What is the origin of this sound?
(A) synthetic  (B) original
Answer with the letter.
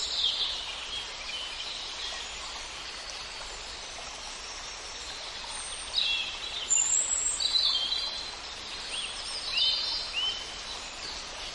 B